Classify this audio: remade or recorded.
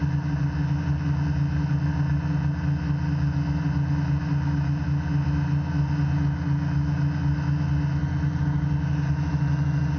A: recorded